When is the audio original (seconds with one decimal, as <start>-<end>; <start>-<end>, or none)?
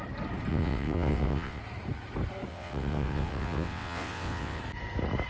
0.0-0.5; 1.6-2.5; 4.6-5.3